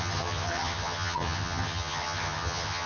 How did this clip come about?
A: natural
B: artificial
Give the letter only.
B